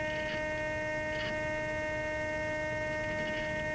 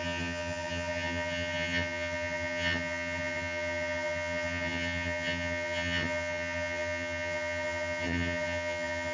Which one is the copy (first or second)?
second